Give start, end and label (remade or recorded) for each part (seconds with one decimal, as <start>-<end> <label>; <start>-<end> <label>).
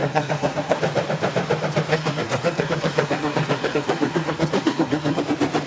0.0-0.8 remade; 0.8-1.9 recorded; 1.9-5.2 remade; 5.2-5.7 recorded